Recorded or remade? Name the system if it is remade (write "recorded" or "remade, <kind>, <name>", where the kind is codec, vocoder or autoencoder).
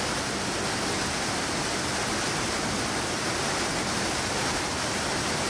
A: recorded